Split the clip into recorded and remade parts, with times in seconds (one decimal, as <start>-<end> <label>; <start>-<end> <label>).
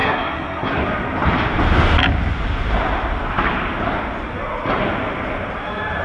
0.0-0.7 remade; 0.7-6.0 recorded